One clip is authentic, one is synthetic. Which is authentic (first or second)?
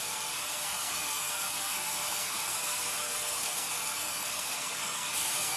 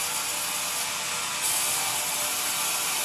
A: second